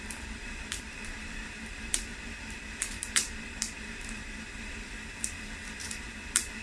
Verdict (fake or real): fake